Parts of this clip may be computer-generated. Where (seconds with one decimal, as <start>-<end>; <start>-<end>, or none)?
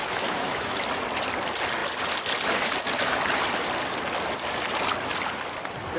0.0-0.8